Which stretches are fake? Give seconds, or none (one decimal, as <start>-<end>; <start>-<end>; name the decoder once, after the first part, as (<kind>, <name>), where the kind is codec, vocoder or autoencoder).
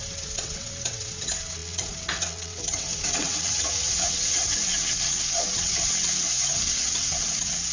0.0-7.7 (vocoder, WaveNeXt)